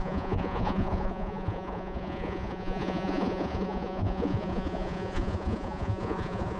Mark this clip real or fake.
fake